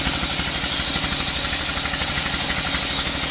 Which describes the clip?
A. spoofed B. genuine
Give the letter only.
B